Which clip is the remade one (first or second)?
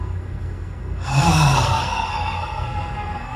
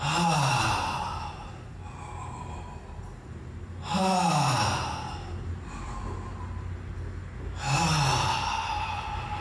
first